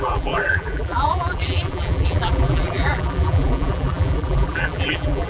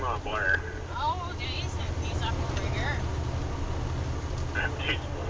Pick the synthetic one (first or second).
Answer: first